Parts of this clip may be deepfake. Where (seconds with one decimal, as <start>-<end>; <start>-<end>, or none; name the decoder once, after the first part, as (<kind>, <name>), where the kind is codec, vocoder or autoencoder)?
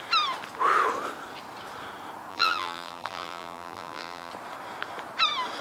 2.3-4.3 (vocoder, BigVGAN v2)